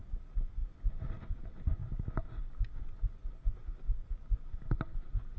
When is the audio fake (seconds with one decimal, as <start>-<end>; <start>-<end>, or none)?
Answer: none